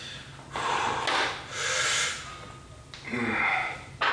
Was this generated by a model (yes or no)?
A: no